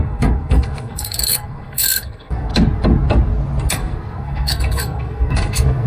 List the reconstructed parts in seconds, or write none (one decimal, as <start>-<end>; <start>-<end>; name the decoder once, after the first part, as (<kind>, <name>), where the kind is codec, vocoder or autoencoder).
0.0-2.5 (codec, SNAC); 3.7-5.9